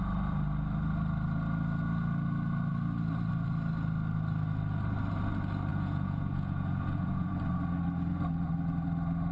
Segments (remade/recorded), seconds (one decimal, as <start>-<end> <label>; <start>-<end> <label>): 0.0-5.7 recorded; 5.7-7.3 remade; 7.3-9.3 recorded